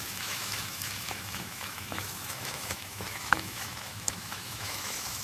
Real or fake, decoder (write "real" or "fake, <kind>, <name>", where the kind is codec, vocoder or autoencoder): fake, autoencoder, DAC-VAE